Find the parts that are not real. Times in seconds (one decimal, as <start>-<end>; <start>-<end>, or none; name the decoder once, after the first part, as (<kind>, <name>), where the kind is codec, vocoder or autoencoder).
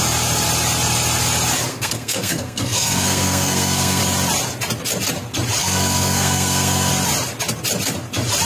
1.7-4.0 (codec, SNAC); 5.6-6.9